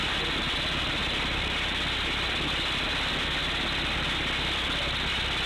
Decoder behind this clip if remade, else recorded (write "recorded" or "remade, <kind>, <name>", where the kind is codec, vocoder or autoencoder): recorded